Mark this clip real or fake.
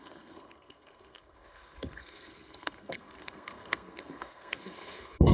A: fake